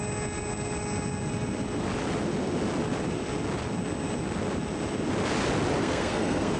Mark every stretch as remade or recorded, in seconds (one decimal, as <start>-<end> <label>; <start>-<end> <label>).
0.0-5.8 recorded; 5.8-6.6 remade